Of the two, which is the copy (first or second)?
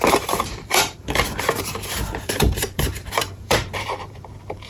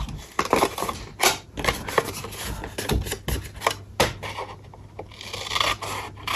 first